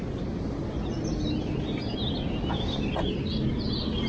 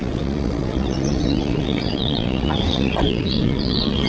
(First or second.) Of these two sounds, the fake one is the second